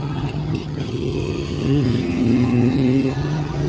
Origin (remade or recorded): remade